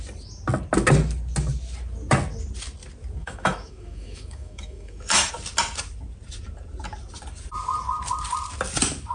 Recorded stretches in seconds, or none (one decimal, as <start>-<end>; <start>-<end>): 0.0-3.2; 5.3-9.1